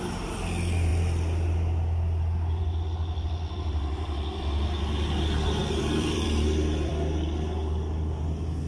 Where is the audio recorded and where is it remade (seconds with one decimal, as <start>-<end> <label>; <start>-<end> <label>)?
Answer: 0.0-5.6 recorded; 5.6-6.9 remade; 6.9-8.7 recorded

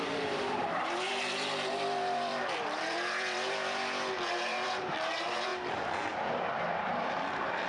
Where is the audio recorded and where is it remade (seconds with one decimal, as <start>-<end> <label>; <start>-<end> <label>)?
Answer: 0.0-5.5 remade; 5.5-6.5 recorded; 6.5-7.7 remade